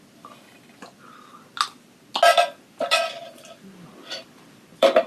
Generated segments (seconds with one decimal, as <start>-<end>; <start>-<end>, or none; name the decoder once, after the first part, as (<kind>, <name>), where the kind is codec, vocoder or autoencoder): 2.3-5.1 (vocoder, BigVGAN v2)